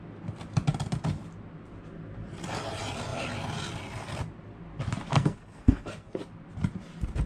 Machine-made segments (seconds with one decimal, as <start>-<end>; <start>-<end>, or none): 5.1-6.2